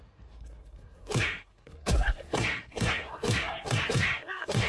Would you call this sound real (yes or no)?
no